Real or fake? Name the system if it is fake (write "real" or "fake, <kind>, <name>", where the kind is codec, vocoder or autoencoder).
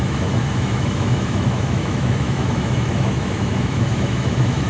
fake, autoencoder, DAC-VAE